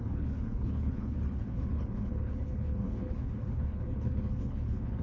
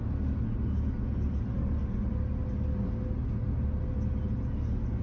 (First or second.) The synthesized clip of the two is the first